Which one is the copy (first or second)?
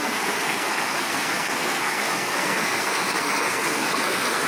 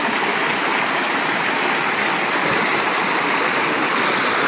first